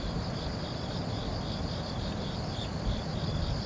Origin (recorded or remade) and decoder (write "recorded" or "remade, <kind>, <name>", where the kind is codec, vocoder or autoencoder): recorded